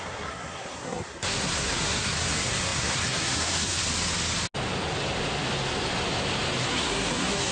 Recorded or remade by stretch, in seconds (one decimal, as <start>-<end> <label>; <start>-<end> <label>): 0.0-3.8 remade; 3.8-6.6 recorded; 6.6-7.5 remade